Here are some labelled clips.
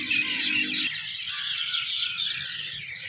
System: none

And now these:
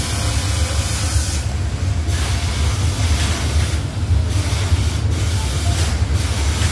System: none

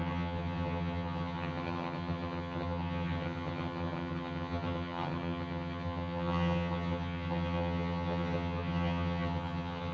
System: vocoder, HiFi-GAN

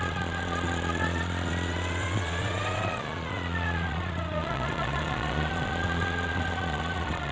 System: vocoder, Vocos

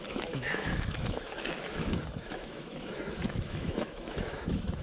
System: autoencoder, DAC-VAE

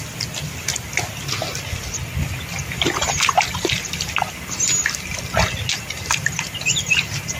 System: none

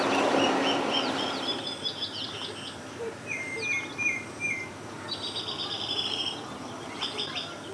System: vocoder, BigVGAN v2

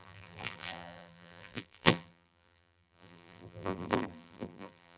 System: vocoder, BigVGAN v2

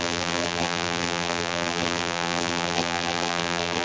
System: vocoder, BigVGAN v2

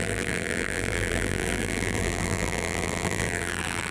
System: vocoder, BigVGAN v2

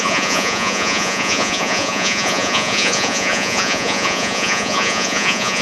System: vocoder, Vocos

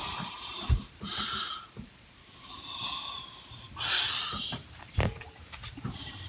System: vocoder, BigVGAN v2